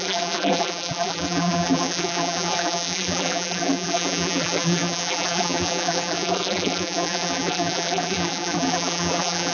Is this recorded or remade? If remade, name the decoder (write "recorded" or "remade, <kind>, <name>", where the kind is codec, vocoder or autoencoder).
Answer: remade, vocoder, BigVGAN v2